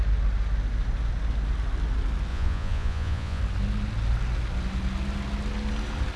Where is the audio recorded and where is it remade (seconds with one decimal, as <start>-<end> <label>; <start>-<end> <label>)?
0.0-2.3 recorded; 2.3-3.4 remade; 3.4-6.2 recorded